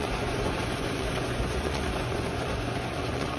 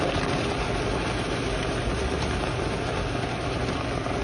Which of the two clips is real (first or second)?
second